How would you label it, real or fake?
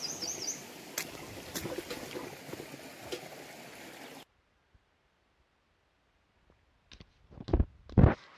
real